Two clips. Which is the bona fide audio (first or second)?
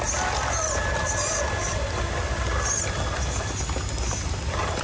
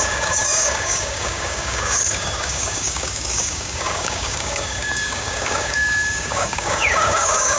first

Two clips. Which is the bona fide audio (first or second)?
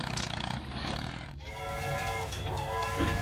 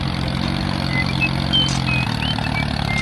second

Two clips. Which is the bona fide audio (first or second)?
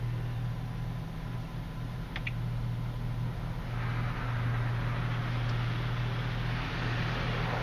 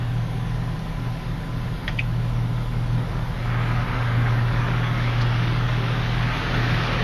first